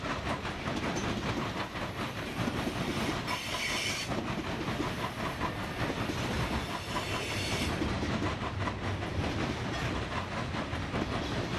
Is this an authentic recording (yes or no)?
yes